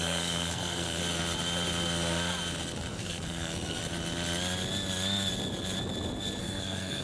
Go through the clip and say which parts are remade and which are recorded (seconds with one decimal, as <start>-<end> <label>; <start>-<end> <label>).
0.0-1.0 remade; 1.0-2.9 recorded; 2.9-3.8 remade; 3.8-6.4 recorded; 6.4-7.0 remade